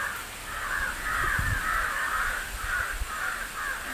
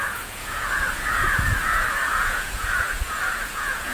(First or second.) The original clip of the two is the first